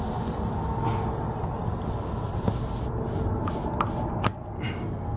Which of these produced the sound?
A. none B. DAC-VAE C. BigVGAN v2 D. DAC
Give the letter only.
A